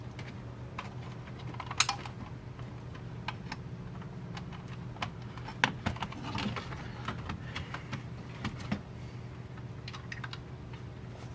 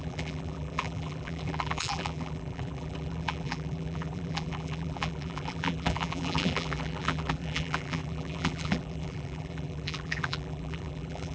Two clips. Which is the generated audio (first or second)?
second